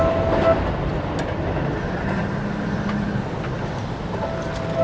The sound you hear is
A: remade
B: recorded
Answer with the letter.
B